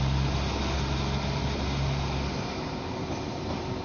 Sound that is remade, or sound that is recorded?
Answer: recorded